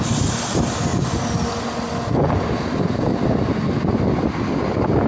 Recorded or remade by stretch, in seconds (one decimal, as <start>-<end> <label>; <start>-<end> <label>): 0.0-5.1 recorded